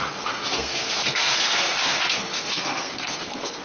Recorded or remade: remade